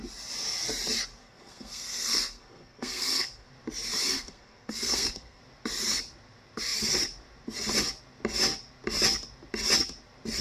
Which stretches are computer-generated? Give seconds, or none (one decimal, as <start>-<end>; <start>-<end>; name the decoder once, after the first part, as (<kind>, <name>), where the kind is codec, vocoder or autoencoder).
1.2-3.5 (codec, SNAC); 4.0-5.4